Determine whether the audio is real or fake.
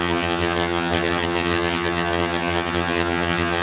fake